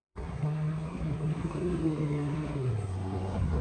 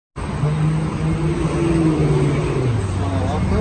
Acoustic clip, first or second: second